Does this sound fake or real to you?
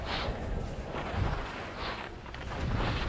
fake